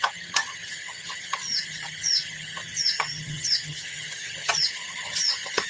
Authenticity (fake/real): fake